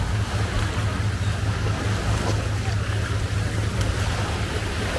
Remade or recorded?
recorded